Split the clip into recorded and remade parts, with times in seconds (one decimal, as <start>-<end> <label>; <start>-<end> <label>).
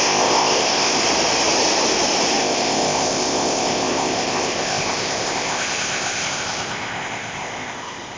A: 0.0-1.0 remade; 1.0-2.4 recorded; 2.4-8.2 remade